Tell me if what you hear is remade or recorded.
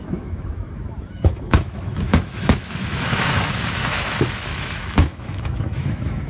remade